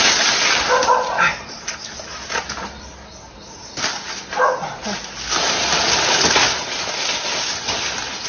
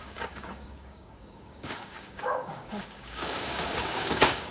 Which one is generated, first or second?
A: second